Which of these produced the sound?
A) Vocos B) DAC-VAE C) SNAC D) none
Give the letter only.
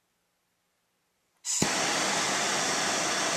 D